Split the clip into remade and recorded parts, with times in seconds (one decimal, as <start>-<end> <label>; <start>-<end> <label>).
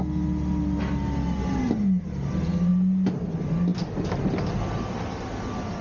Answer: 0.0-5.8 recorded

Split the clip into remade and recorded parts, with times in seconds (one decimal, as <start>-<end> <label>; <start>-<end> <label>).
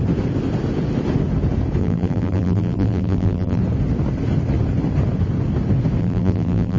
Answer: 0.0-1.8 recorded; 1.8-3.6 remade; 3.6-6.0 recorded; 6.0-6.8 remade